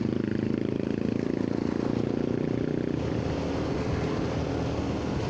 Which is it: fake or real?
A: real